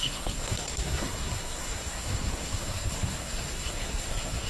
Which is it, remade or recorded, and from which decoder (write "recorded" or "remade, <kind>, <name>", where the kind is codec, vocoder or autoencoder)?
remade, codec, SNAC